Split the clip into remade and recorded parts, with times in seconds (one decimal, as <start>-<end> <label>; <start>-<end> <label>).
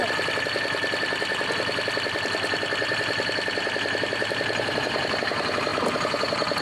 0.0-4.0 recorded; 4.0-6.6 remade